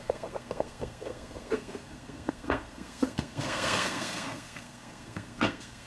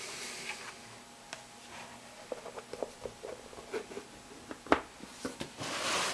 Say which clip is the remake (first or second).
first